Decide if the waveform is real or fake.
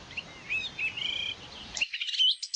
real